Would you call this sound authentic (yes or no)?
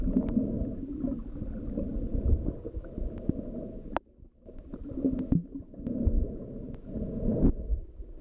yes